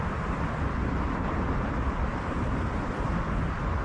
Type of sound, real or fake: real